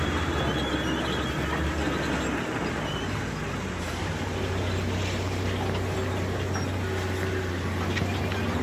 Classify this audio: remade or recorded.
recorded